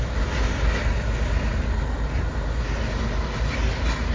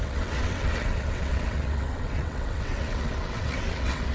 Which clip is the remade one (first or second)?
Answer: second